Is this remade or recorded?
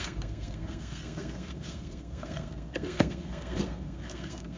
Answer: remade